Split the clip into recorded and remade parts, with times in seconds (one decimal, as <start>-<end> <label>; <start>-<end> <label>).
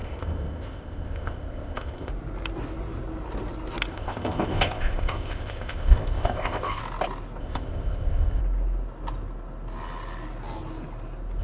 0.0-2.1 remade; 2.1-3.9 recorded; 3.9-6.8 remade; 6.8-7.4 recorded; 7.4-8.4 remade; 8.4-11.4 recorded